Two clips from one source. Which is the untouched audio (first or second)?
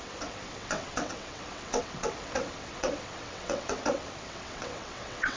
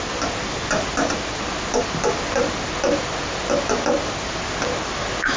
second